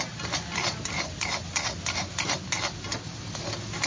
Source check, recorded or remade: recorded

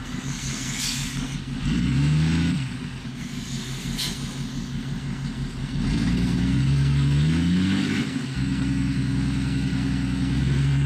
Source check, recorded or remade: remade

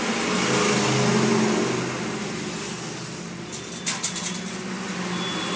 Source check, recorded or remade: recorded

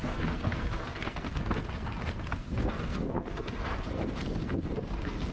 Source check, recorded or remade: remade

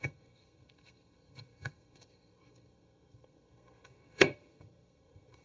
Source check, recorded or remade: remade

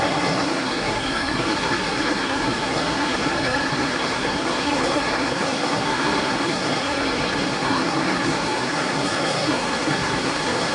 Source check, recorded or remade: remade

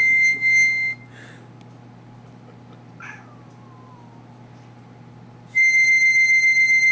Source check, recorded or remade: recorded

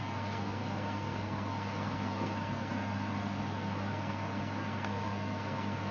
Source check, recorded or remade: remade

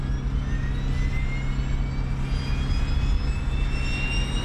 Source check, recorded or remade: recorded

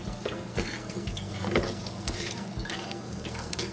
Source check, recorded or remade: remade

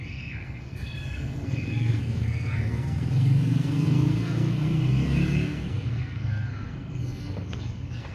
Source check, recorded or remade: remade